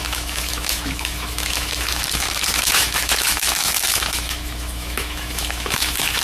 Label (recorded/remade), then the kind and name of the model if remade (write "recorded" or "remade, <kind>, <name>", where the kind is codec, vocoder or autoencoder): remade, autoencoder, DAC-VAE